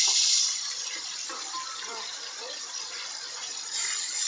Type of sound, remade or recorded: recorded